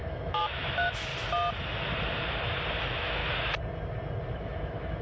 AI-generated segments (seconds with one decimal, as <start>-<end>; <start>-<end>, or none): 0.0-1.1; 2.8-3.2; 4.3-5.0